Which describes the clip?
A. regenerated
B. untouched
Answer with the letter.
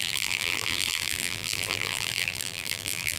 A